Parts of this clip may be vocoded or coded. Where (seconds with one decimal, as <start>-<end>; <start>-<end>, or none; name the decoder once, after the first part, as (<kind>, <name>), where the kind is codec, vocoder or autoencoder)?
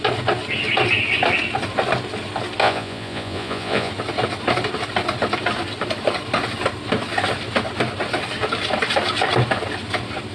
2.6-3.9 (vocoder, Vocos)